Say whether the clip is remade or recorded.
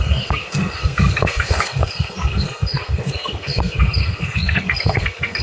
remade